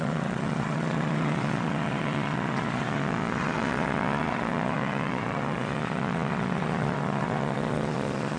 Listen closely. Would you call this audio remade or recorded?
remade